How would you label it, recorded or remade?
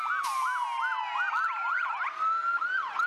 recorded